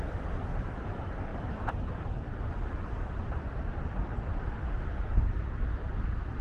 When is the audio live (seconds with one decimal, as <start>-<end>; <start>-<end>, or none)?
none